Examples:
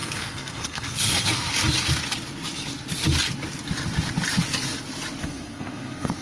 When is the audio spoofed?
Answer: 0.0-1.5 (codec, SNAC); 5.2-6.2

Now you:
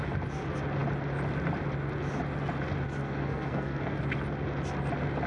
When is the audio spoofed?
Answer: 3.0-4.0 (codec, SNAC)